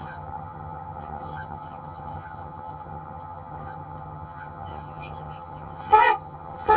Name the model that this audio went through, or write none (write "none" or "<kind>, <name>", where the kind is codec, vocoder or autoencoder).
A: vocoder, HiFi-GAN